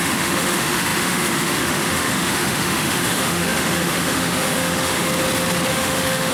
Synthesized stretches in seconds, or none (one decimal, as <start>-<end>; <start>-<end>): 0.0-5.1; 5.7-6.3